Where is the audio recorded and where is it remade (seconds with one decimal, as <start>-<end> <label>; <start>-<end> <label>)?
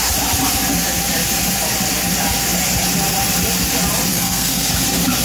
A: 0.0-4.1 recorded; 4.1-4.7 remade; 4.7-5.2 recorded